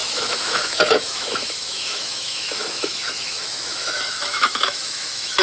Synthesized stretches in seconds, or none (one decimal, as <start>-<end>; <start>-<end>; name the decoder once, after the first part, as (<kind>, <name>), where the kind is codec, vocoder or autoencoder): 0.0-5.4 (autoencoder, DAC-VAE)